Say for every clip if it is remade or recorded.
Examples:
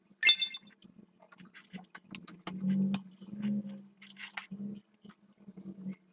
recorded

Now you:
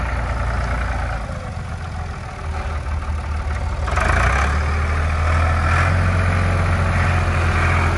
recorded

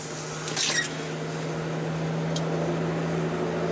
recorded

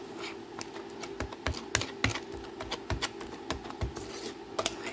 recorded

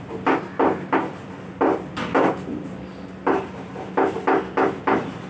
recorded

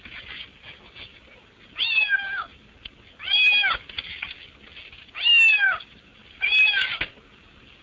recorded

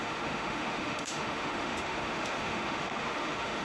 remade